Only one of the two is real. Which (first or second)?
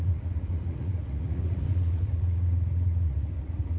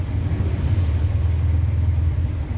second